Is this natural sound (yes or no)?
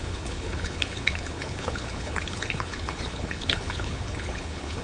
no